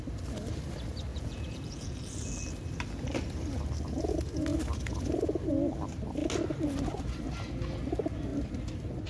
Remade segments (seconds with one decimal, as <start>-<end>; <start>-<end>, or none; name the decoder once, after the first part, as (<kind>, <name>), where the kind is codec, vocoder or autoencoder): 1.1-2.1 (vocoder, Vocos)